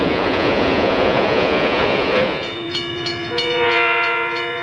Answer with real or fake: fake